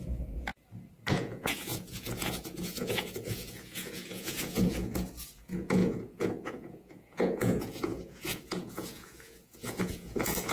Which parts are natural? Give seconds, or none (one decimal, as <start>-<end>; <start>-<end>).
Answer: 0.5-1.1